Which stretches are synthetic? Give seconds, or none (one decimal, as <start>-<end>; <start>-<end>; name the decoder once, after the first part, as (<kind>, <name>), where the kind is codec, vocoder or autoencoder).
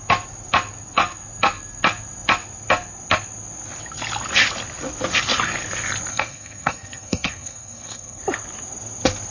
6.1-8.2 (codec, SNAC)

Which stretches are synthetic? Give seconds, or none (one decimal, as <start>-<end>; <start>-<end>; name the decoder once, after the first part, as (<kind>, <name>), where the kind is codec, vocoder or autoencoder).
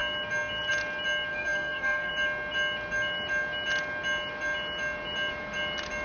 1.3-2.1 (codec, SNAC)